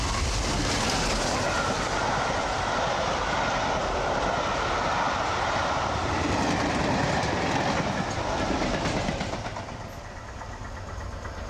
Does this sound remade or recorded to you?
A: recorded